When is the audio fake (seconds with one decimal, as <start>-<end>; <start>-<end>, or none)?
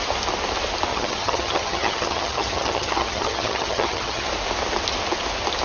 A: 0.9-4.3